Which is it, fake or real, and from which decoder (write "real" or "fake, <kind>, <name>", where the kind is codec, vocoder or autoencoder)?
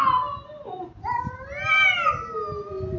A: real